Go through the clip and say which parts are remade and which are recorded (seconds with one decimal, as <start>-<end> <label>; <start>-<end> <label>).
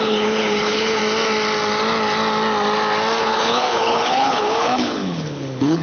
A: 0.0-1.0 remade; 1.0-3.2 recorded; 3.2-5.8 remade